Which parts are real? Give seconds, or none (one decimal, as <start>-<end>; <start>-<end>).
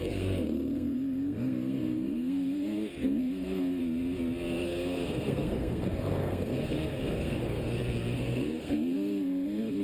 3.8-4.6